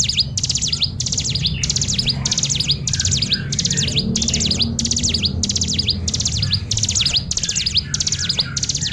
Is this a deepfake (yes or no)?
no